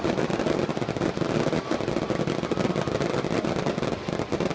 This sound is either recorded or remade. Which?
recorded